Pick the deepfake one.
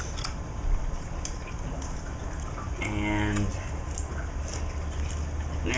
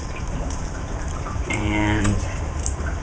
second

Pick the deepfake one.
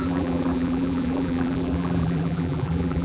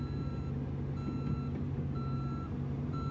first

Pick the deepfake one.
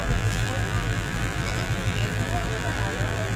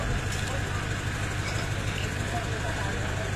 first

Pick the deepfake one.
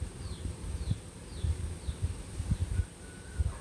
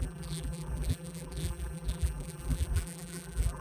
second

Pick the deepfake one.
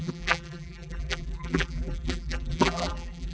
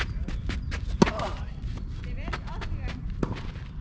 first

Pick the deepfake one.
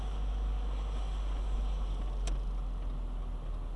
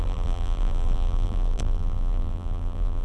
second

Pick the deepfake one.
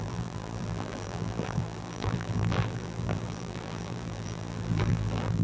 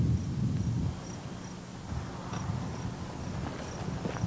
first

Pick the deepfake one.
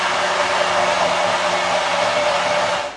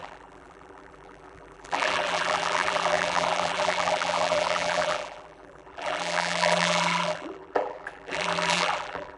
second